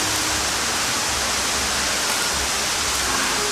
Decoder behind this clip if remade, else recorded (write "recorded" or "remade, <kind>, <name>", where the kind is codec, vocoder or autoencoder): recorded